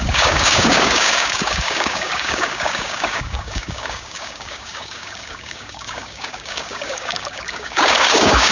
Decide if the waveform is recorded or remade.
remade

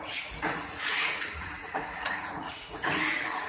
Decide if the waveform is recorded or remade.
remade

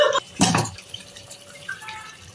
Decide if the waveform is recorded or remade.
remade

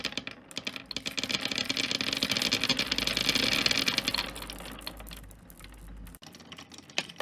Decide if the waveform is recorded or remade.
recorded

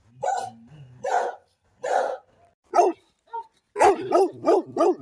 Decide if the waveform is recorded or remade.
recorded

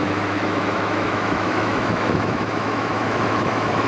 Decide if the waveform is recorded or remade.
remade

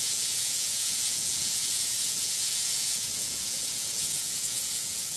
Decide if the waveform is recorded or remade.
remade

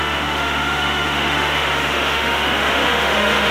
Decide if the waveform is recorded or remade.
remade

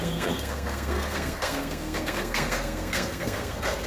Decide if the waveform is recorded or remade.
remade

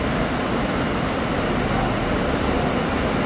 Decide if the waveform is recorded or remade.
recorded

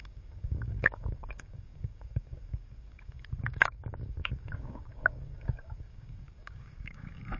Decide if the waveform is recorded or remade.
remade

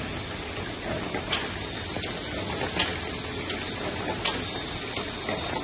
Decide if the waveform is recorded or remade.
recorded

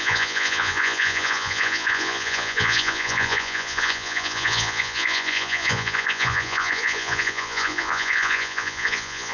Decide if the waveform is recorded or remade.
remade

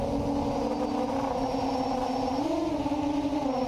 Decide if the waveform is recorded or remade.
recorded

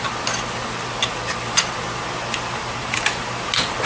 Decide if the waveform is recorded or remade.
recorded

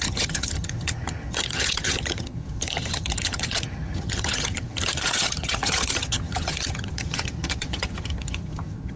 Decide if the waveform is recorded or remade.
remade